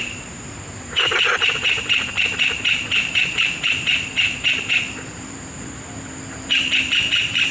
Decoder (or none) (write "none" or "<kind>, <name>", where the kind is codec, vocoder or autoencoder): vocoder, BigVGAN v2